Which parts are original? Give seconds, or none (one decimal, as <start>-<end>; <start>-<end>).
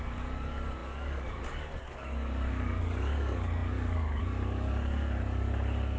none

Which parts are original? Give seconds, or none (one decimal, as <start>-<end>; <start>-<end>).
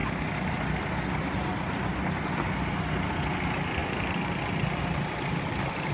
0.0-5.9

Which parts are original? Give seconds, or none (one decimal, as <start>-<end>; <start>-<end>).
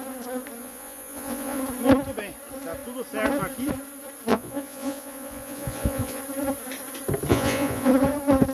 0.0-0.6; 1.6-4.3; 6.2-7.3; 7.9-8.5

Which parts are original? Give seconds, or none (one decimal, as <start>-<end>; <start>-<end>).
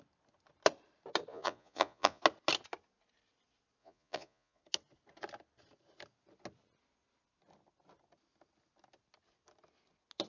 0.0-1.3; 2.2-3.8; 4.6-10.3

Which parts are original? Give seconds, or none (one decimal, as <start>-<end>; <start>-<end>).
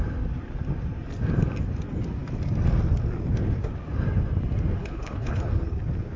0.0-4.8; 5.4-6.2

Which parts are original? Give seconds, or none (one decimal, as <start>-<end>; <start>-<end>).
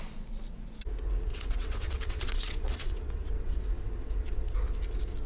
0.0-1.3; 3.6-5.3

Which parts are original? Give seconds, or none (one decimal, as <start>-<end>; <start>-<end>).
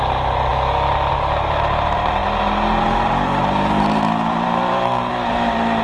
0.5-1.1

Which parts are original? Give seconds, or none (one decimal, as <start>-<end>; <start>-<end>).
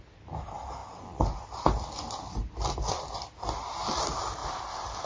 0.0-5.1